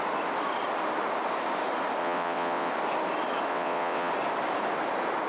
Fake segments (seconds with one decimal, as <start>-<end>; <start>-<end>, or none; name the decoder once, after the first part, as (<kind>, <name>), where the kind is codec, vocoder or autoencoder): 2.0-2.7 (vocoder, WaveNeXt); 3.5-4.1